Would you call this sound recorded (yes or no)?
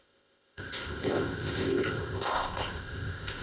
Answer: no